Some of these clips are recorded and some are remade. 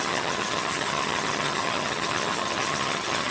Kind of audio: remade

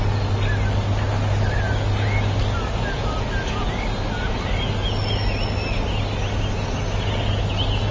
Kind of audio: recorded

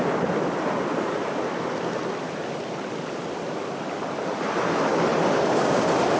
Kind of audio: recorded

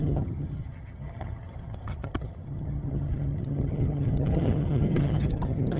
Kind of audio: remade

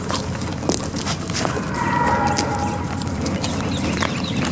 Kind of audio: recorded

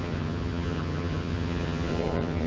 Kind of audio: remade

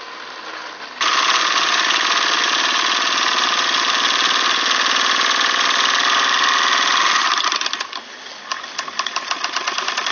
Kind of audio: recorded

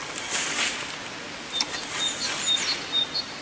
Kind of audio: recorded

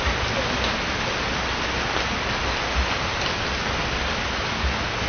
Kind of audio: recorded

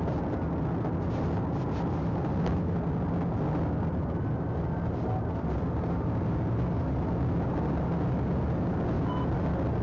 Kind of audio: recorded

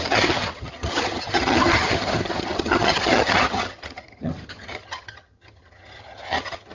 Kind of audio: remade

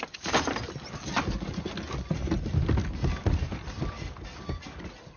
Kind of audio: recorded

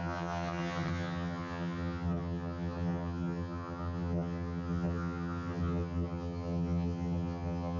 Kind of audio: remade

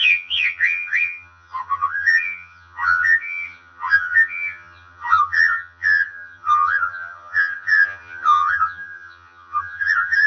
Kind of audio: remade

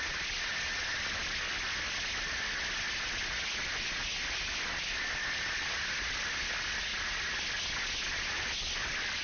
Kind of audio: recorded